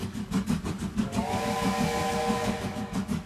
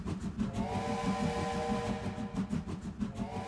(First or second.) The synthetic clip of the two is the first